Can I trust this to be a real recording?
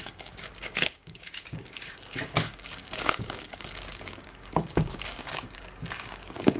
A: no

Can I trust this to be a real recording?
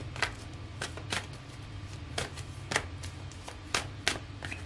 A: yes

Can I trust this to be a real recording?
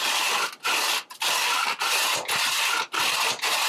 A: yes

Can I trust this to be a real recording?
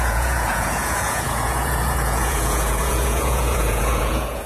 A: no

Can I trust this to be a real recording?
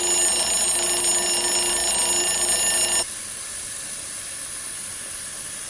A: yes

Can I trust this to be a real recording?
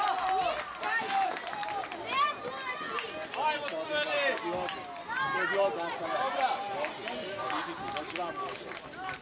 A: yes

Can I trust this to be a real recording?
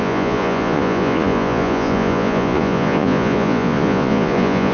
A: no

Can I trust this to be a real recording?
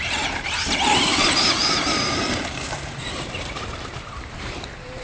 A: no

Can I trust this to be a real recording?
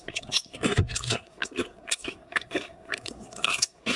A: no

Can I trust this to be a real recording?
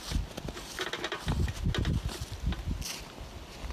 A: yes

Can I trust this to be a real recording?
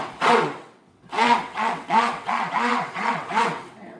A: no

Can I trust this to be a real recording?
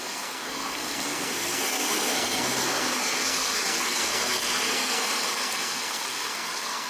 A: no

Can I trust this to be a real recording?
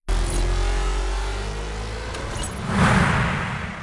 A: yes